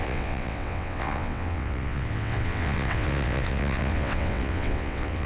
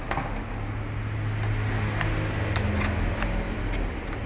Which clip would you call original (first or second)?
second